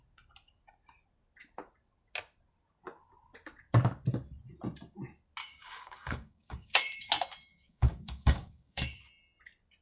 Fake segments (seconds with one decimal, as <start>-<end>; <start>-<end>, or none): 5.4-7.1; 7.5-9.1